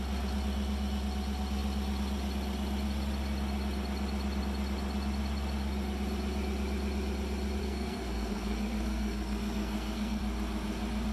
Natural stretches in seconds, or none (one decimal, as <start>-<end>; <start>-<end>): 0.0-7.6; 10.2-11.1